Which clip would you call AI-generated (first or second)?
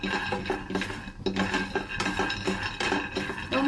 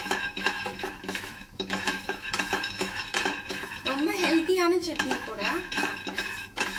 second